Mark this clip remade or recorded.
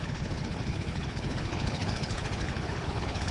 remade